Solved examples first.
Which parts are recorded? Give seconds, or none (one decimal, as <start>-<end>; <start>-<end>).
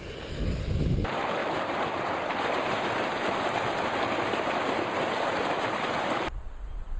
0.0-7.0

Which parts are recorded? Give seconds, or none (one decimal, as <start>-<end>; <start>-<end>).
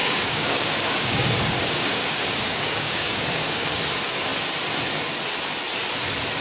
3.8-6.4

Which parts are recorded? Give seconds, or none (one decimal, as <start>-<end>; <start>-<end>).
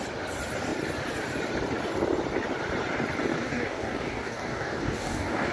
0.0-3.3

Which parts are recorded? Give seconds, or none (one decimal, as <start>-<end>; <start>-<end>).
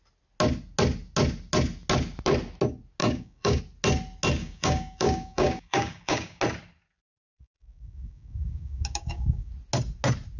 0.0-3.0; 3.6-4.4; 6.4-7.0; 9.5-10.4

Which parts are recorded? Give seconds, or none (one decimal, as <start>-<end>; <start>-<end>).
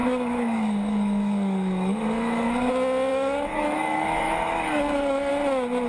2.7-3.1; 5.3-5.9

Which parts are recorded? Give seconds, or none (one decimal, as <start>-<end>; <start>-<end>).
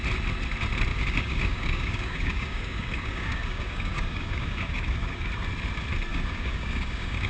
0.0-0.9; 5.3-6.1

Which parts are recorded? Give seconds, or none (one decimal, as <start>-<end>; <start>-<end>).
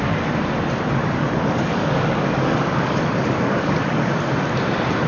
0.0-1.0; 4.1-5.1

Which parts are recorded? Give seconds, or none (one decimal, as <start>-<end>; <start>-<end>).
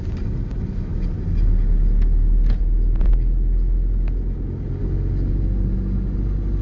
0.0-6.6